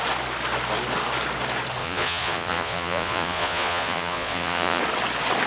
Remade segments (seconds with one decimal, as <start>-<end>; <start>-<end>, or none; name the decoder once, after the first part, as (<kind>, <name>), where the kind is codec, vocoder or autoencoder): 1.8-4.8 (vocoder, Vocos)